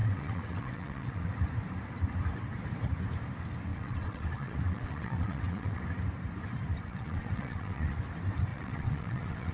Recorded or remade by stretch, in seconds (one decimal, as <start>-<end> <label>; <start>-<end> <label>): 0.0-1.3 remade; 1.3-3.7 recorded; 3.7-5.8 remade; 5.8-6.7 recorded; 6.7-8.0 remade; 8.0-8.5 recorded; 8.5-9.5 remade